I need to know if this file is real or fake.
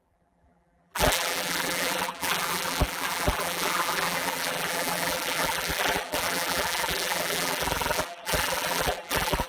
fake